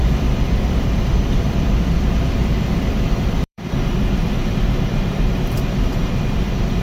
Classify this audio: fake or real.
fake